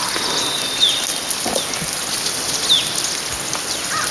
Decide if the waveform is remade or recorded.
recorded